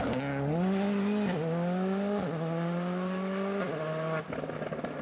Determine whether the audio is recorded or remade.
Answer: recorded